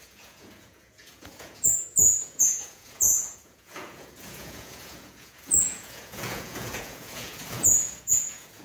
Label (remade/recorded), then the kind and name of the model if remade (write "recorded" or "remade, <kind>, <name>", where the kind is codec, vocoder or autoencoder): remade, vocoder, Vocos